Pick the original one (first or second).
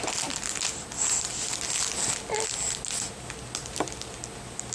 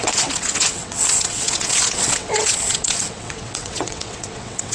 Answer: first